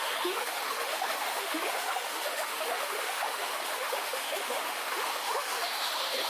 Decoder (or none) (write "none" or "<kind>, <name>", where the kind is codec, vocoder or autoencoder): autoencoder, DAC-VAE